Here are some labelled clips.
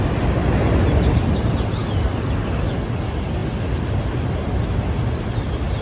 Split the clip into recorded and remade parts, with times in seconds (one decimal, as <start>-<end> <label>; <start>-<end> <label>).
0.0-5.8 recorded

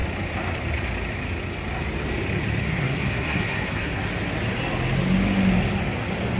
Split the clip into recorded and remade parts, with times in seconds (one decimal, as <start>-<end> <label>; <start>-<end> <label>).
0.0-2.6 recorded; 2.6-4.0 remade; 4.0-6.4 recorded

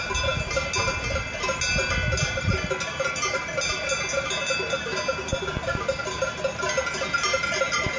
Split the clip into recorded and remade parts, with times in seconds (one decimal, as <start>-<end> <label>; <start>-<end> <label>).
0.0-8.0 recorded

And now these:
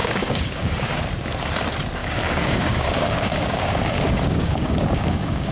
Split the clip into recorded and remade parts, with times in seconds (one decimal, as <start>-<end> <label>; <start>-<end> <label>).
0.0-1.0 remade; 1.0-2.0 recorded; 2.0-5.5 remade

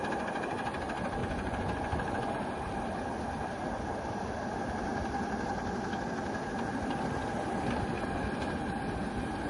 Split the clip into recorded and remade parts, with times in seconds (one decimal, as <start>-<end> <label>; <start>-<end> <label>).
0.0-1.2 recorded; 1.2-2.3 remade; 2.3-9.5 recorded